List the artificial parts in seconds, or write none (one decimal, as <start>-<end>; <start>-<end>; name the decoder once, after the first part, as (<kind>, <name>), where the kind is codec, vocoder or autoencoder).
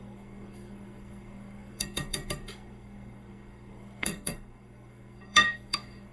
0.0-6.1 (codec, SNAC)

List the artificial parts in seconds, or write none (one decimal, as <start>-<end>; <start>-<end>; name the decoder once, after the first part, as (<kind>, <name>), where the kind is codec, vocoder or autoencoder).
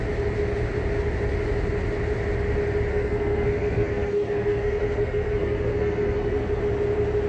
2.9-6.6 (codec, SNAC)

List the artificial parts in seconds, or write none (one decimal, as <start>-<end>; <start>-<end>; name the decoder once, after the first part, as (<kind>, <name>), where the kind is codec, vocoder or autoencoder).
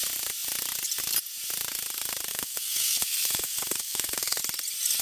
2.3-4.4 (codec, SNAC)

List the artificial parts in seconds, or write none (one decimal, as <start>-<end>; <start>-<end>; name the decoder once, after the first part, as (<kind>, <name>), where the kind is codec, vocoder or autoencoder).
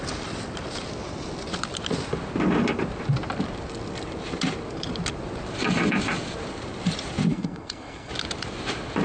7.3-8.1 (codec, SNAC)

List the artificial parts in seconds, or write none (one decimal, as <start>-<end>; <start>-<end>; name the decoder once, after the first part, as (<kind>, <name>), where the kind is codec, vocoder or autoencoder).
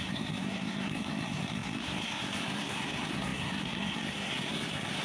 0.0-5.0 (codec, SNAC)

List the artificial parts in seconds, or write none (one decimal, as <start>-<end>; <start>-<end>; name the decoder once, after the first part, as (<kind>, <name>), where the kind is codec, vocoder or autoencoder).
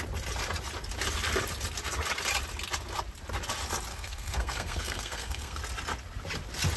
3.9-5.6 (codec, SNAC)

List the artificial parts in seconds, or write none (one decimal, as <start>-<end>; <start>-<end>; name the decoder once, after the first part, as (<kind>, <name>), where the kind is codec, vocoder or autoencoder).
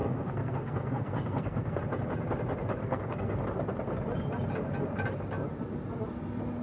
0.0-1.8 (codec, SNAC); 2.8-3.4